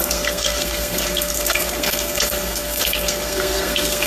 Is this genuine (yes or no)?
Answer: no